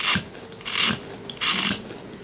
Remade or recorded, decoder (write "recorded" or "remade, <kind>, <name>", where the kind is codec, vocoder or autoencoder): recorded